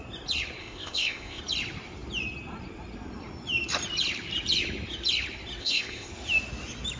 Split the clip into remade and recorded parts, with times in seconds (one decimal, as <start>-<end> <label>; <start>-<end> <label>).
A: 0.0-0.6 recorded; 0.6-1.4 remade; 1.4-5.6 recorded; 5.6-6.1 remade; 6.1-7.0 recorded